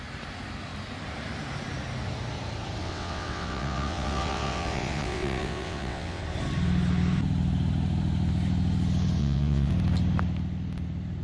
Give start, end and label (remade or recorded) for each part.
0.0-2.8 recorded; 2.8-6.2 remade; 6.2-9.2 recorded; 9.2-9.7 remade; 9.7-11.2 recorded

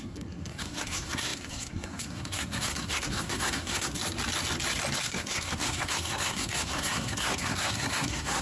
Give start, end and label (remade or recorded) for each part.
0.0-4.0 remade; 4.0-5.0 recorded; 5.0-8.4 remade

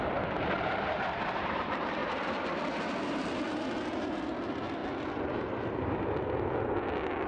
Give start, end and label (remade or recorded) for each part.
0.0-4.8 remade; 4.8-7.3 recorded

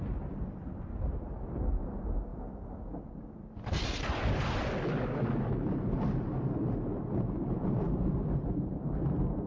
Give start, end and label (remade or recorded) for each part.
0.0-9.5 recorded

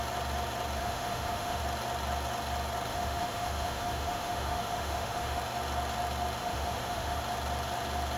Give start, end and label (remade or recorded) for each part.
0.0-0.8 recorded; 0.8-1.6 remade; 1.6-2.9 recorded; 2.9-5.4 remade; 5.4-6.4 recorded; 6.4-7.2 remade; 7.2-8.2 recorded

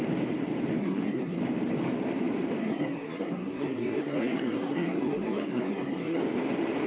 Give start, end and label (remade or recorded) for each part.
0.0-0.8 recorded; 0.8-1.4 remade; 1.4-2.6 recorded; 2.6-6.2 remade; 6.2-6.9 recorded

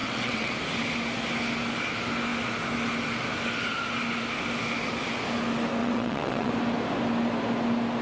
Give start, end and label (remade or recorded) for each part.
0.0-0.5 remade; 0.5-5.8 recorded; 5.8-6.5 remade; 6.5-8.0 recorded